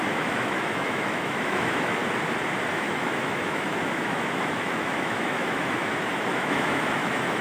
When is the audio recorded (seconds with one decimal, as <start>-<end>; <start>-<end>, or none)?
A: 2.0-2.7